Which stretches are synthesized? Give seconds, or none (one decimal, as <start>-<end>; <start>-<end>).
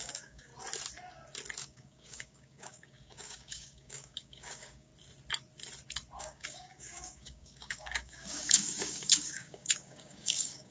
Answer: 0.0-0.5; 1.6-4.9; 6.2-10.7